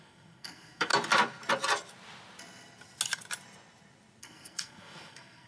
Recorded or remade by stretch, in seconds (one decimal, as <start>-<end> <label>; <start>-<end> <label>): 0.0-0.9 remade; 0.9-4.2 recorded; 4.2-5.5 remade